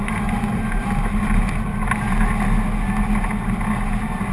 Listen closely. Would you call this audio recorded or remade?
recorded